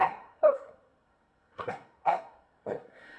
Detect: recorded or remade remade